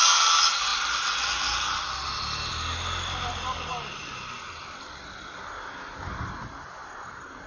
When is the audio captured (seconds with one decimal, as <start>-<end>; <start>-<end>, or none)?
0.0-7.5

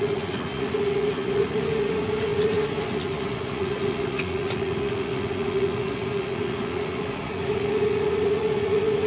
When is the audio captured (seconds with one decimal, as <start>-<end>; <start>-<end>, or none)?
none

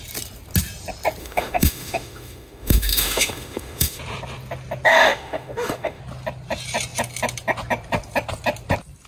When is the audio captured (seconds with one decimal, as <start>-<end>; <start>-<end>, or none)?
0.0-1.2; 4.0-4.9; 6.0-9.1

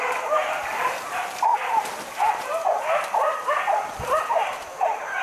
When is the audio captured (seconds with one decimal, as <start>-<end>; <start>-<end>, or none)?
1.5-4.6

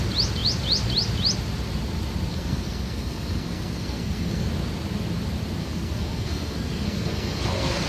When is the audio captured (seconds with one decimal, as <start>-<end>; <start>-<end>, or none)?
0.0-2.3; 4.5-5.6

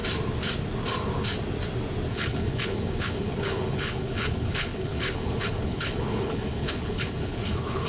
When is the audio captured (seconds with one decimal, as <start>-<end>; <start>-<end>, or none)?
0.0-2.1

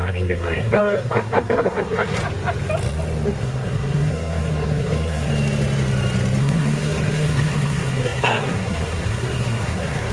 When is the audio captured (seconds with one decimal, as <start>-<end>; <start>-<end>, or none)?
2.2-3.4; 5.3-6.4